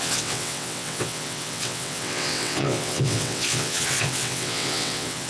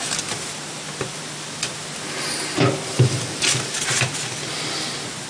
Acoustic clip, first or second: second